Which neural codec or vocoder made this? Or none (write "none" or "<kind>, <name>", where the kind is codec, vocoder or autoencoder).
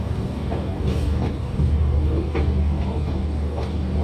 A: codec, DAC